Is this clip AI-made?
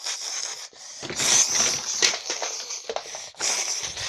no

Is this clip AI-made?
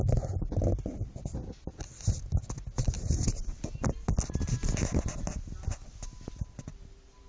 no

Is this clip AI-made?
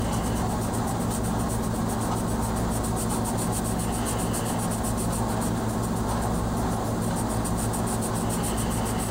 no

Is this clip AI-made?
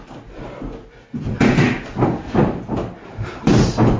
no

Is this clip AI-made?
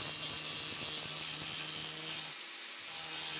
no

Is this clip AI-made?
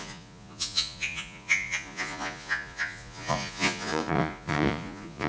yes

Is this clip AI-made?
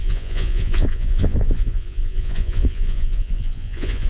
yes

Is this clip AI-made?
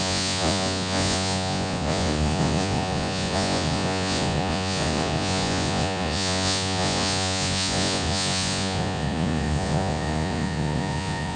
yes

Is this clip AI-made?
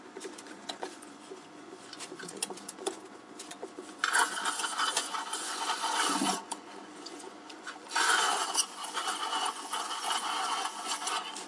yes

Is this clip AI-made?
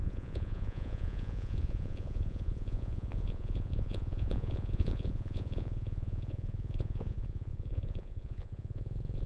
yes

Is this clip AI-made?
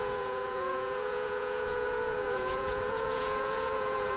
yes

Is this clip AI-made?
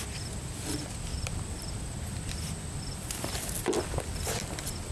no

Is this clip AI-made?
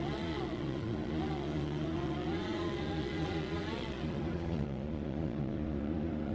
yes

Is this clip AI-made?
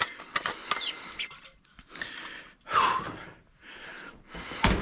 no